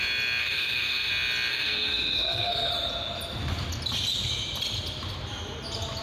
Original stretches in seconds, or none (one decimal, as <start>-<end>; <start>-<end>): 0.0-0.4; 1.1-1.5; 2.7-6.0